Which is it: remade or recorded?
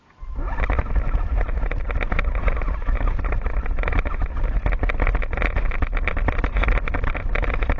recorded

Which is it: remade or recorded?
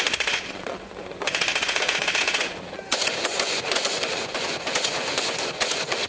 remade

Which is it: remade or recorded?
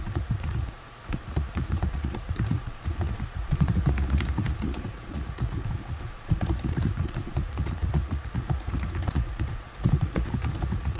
remade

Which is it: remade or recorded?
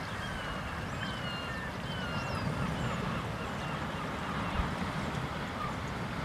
recorded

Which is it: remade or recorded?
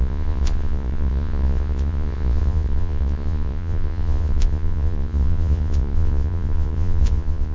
remade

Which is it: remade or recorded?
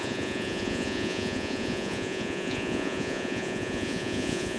remade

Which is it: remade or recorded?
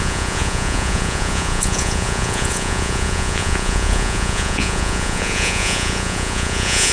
remade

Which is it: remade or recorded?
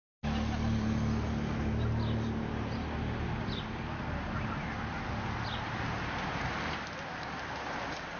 recorded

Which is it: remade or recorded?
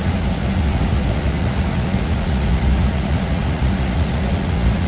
remade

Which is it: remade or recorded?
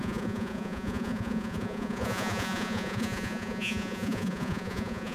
remade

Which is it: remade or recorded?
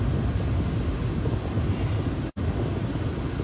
recorded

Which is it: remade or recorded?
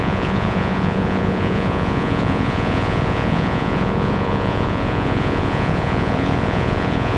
remade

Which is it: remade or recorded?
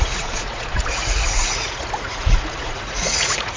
remade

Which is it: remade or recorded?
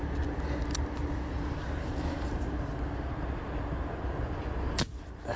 recorded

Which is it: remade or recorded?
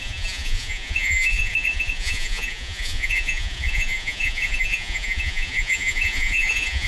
remade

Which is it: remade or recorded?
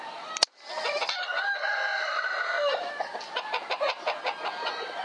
recorded